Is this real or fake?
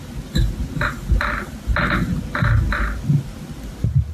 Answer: real